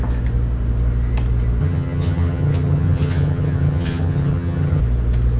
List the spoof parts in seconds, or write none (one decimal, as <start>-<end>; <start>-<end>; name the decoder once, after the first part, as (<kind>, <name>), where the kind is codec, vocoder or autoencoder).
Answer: 1.6-4.8 (vocoder, HiFi-GAN)